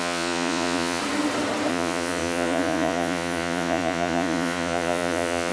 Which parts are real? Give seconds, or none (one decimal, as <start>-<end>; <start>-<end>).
1.0-1.7